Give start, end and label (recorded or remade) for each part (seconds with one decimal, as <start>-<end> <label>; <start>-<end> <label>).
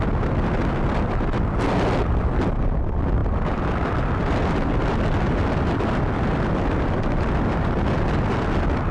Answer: 0.0-8.9 recorded